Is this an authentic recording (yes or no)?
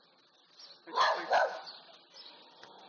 yes